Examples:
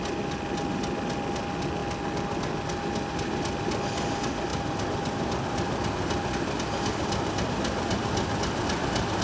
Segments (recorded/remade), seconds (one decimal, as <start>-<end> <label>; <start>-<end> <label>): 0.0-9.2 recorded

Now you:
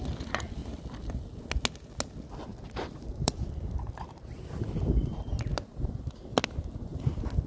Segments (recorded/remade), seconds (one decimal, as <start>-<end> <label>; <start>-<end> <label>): 0.0-0.6 recorded; 0.6-1.2 remade; 1.2-2.5 recorded; 2.5-4.2 remade; 4.2-7.5 recorded

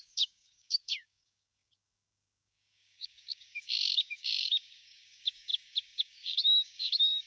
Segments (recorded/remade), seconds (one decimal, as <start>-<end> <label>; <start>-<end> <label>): 0.0-7.3 remade

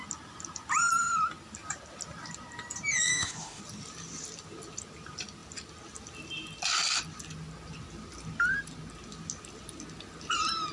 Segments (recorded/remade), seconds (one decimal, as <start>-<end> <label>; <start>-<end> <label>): 0.0-3.1 recorded; 3.1-3.6 remade; 3.6-10.7 recorded

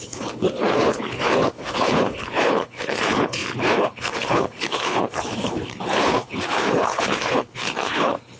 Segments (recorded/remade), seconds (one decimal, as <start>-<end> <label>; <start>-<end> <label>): 0.0-8.4 remade